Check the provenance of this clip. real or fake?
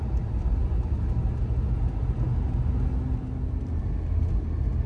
real